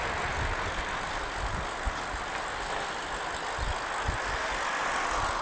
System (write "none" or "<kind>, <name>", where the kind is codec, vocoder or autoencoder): none